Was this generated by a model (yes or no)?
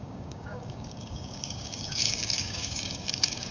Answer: yes